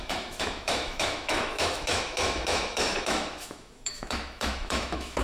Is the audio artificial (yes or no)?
yes